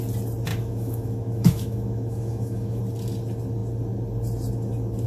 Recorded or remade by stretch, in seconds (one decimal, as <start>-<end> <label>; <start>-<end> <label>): 0.0-0.5 recorded; 0.5-2.8 remade; 2.8-5.1 recorded